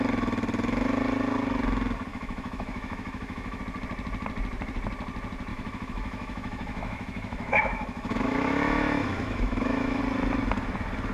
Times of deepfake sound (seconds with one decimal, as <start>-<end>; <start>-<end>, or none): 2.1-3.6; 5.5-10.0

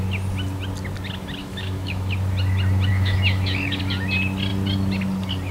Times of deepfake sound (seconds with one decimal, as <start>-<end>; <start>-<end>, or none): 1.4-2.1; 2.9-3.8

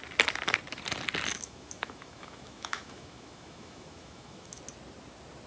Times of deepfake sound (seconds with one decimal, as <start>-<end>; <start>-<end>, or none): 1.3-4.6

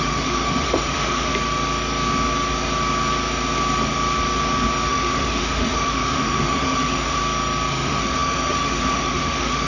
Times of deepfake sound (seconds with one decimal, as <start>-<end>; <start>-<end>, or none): 0.0-1.3; 4.9-7.2; 7.7-9.7

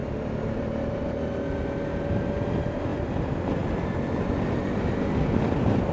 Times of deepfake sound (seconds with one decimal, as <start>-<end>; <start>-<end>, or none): none

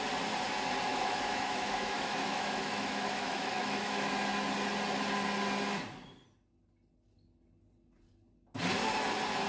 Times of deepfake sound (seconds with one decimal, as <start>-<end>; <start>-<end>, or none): 0.9-4.1

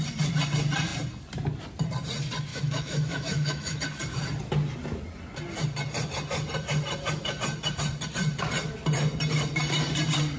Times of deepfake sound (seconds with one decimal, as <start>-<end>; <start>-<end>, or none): 2.5-3.8